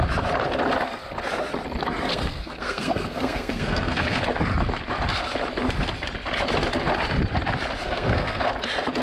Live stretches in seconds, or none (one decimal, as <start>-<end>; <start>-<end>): 0.0-2.1; 4.2-7.8; 8.5-9.0